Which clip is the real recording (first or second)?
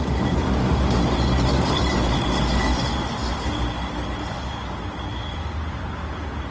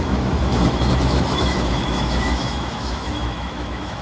first